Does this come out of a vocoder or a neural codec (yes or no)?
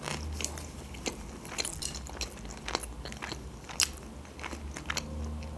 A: no